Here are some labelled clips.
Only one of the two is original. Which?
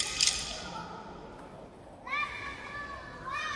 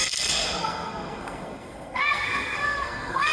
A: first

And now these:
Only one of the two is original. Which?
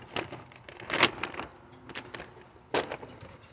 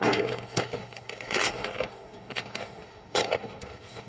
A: first